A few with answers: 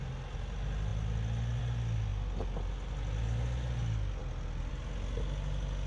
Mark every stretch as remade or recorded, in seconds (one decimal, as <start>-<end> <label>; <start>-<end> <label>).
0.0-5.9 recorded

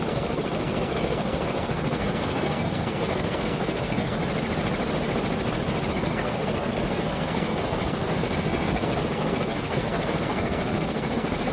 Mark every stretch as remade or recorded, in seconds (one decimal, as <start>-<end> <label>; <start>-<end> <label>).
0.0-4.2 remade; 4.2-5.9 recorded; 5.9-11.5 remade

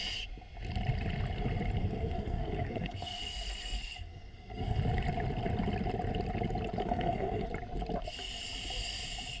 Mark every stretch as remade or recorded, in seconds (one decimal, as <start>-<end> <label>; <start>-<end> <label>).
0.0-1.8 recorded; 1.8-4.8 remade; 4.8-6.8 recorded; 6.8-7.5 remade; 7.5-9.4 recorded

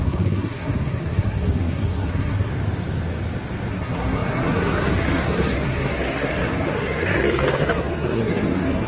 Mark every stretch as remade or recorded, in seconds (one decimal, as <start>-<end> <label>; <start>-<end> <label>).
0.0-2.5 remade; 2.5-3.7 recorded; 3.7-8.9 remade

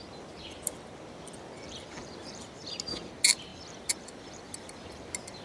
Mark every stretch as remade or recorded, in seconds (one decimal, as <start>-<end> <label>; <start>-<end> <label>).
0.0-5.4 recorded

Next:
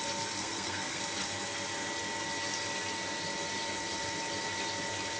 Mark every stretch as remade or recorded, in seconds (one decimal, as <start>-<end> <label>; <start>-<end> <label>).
0.0-0.4 recorded; 0.4-1.0 remade; 1.0-5.2 recorded

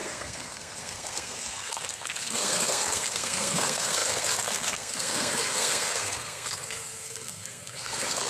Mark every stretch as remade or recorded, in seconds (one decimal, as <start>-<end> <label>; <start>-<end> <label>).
0.0-8.3 remade

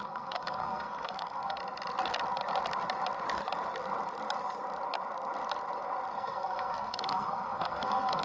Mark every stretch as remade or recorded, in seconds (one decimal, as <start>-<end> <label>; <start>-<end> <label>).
0.0-1.6 remade; 1.6-6.1 recorded; 6.1-8.2 remade